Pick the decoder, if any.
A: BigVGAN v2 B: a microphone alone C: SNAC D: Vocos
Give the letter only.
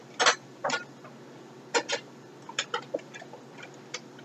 B